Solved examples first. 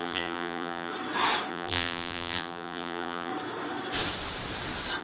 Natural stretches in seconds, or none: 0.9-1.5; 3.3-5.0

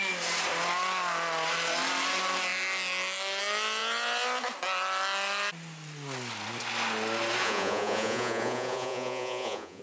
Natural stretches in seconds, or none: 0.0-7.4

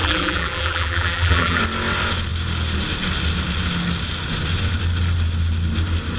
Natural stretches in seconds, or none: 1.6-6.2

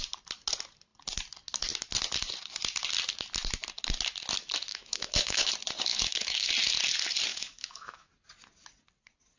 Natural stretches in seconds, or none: 0.0-4.7; 5.5-5.9; 6.5-7.3; 8.1-9.4

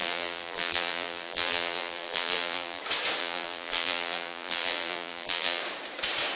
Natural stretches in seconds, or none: 2.8-3.2; 5.6-6.4

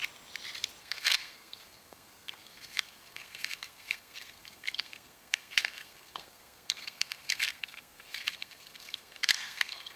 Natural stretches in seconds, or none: 0.0-0.8